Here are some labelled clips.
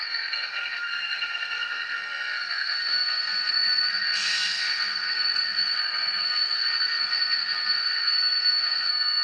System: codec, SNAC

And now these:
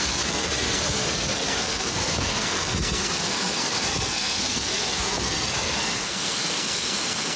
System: codec, SNAC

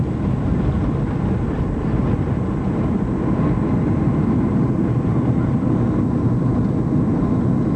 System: none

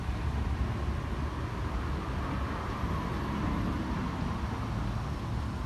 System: none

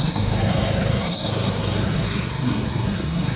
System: codec, SNAC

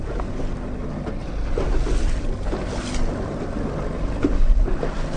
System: none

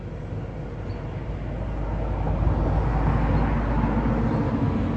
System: none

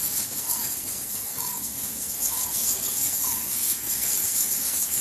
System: codec, SNAC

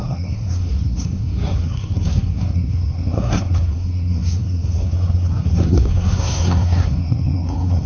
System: codec, SNAC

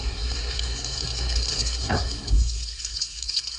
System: codec, SNAC